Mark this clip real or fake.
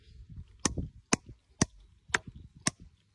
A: real